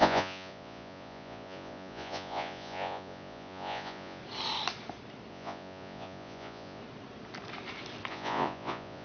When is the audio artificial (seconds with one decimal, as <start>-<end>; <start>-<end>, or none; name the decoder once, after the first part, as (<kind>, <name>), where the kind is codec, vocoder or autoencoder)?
0.0-4.2 (vocoder, Vocos); 5.3-6.8; 8.1-9.0